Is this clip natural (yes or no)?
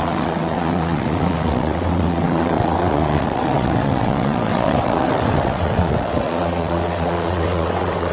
no